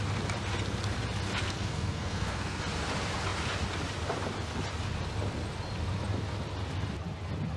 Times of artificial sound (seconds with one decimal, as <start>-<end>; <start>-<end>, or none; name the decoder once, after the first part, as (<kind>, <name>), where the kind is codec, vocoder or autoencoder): 1.4-2.6 (codec, SNAC)